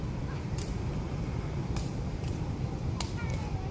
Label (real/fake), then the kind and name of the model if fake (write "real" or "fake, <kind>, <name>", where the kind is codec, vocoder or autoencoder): fake, vocoder, BigVGAN v2